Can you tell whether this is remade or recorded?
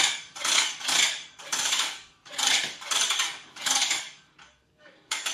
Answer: remade